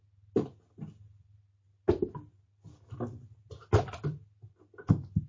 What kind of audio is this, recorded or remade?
recorded